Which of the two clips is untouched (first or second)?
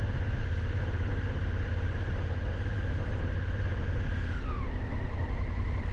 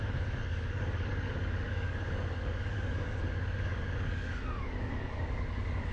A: first